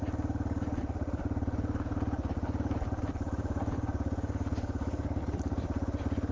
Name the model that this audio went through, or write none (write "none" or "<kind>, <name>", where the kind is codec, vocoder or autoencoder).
none